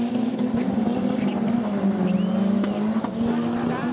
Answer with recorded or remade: recorded